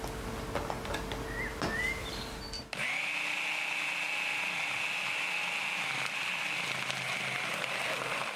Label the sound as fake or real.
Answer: real